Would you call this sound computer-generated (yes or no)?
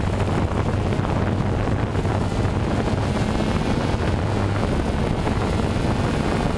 no